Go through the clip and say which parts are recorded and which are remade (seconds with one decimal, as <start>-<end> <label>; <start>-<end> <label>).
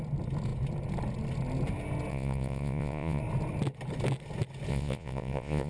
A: 0.0-2.1 recorded; 2.1-3.2 remade; 3.2-4.7 recorded; 4.7-5.7 remade